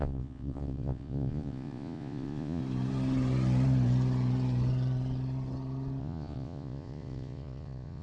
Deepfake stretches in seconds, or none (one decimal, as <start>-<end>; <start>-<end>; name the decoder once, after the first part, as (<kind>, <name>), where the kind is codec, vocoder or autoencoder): 0.0-2.6 (vocoder, Vocos); 6.0-8.0